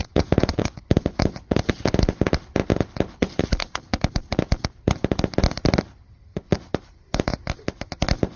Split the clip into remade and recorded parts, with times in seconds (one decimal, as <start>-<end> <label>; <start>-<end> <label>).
0.0-1.7 remade; 1.7-6.3 recorded; 6.3-7.5 remade; 7.5-8.4 recorded